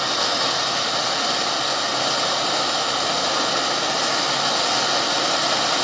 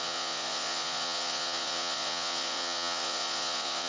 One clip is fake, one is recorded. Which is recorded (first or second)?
first